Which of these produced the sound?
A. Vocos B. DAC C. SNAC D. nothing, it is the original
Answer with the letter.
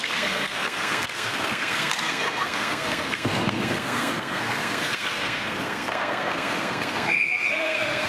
C